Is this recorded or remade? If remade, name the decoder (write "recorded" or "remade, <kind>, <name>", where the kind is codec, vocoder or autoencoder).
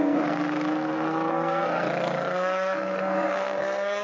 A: remade, codec, SNAC